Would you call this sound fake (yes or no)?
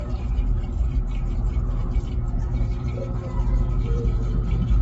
yes